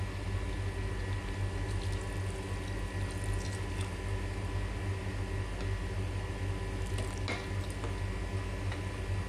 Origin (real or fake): real